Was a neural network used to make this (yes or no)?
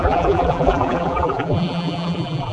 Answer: yes